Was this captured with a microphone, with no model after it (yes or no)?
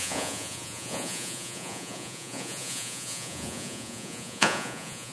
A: no